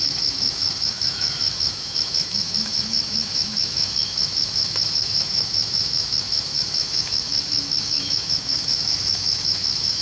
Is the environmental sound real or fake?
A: fake